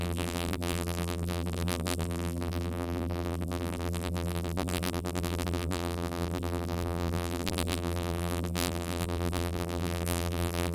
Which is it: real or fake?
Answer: fake